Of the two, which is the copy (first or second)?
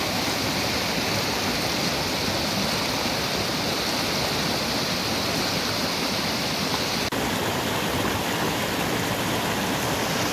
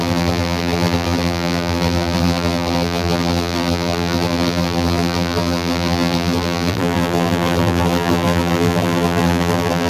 second